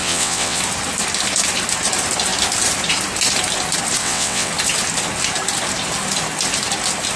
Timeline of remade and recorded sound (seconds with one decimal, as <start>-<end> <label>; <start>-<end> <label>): 0.0-0.6 remade; 0.6-4.0 recorded; 4.0-4.5 remade; 4.5-7.2 recorded